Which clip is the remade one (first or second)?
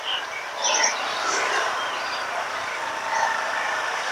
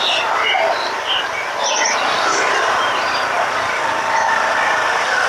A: first